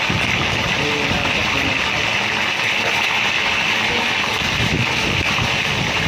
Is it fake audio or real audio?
real